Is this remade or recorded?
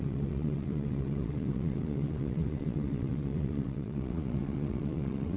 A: remade